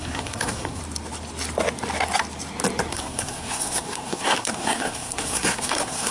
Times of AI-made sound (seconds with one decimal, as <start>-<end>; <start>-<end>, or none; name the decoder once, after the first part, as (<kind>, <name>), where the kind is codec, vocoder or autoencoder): 0.0-0.8 (codec, SNAC); 2.9-6.1